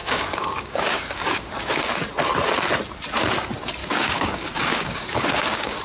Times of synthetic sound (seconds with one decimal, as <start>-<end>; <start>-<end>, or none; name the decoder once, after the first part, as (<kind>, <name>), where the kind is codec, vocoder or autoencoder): 0.0-1.8 (codec, DAC); 3.8-5.8